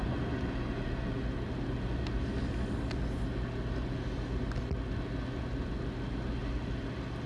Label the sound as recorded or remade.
recorded